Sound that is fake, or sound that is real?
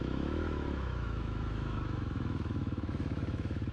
fake